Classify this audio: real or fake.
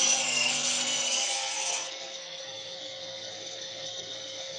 fake